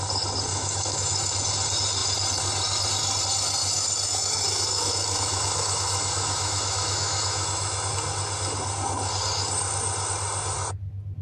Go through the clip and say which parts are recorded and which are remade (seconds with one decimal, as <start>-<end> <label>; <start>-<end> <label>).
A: 0.0-0.5 recorded; 0.5-1.5 remade; 1.5-3.6 recorded; 3.6-7.9 remade; 7.9-11.2 recorded